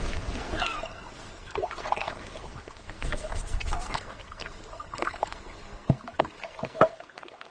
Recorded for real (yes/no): no